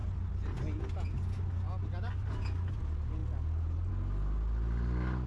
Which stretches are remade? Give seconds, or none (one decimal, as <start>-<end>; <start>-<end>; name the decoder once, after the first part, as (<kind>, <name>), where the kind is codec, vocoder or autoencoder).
none